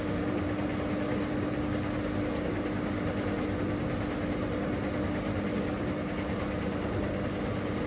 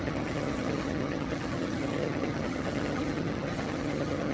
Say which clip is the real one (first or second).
first